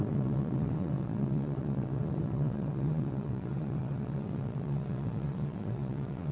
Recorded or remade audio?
remade